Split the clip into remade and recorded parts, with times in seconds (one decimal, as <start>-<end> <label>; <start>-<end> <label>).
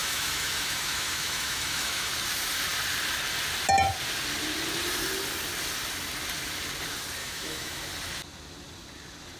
0.0-2.1 remade; 2.1-7.2 recorded; 7.2-7.8 remade; 7.8-9.4 recorded